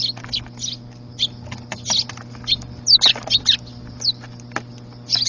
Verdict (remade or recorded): recorded